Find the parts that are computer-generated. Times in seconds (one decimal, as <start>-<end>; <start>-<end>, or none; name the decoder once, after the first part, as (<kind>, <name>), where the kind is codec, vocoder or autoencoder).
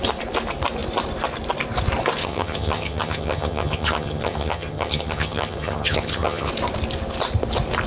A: 2.2-6.5 (vocoder, HiFi-GAN)